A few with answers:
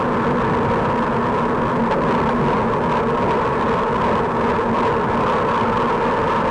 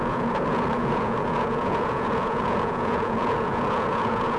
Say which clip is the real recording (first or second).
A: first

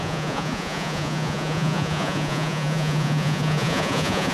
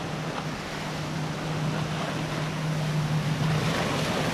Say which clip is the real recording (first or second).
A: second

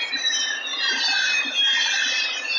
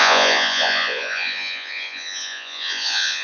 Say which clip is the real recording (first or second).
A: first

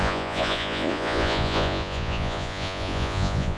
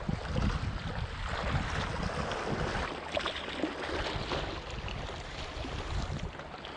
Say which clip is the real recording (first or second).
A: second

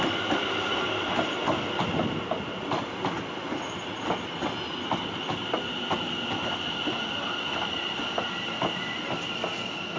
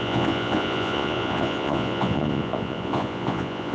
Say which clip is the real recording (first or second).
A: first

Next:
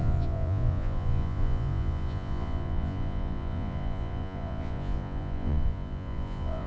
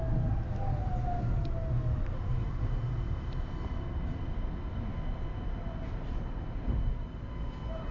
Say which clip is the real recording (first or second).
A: second